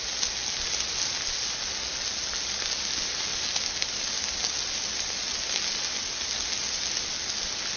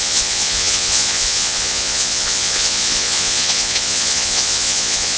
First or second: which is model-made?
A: second